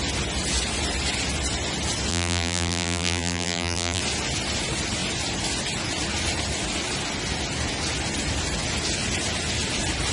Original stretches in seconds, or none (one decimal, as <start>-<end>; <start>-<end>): 0.0-2.1; 4.0-10.1